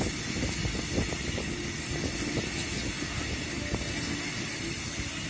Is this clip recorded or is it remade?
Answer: recorded